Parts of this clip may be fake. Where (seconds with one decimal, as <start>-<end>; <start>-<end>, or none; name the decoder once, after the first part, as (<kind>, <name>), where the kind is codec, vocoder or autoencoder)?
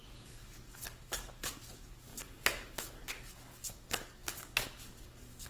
0.0-5.5 (codec, DAC)